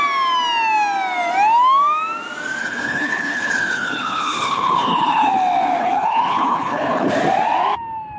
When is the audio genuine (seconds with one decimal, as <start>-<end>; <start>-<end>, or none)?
0.0-2.6; 5.3-5.8; 7.1-8.2